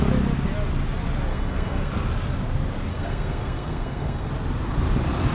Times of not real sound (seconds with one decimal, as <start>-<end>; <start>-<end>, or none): 1.3-1.9; 2.9-4.3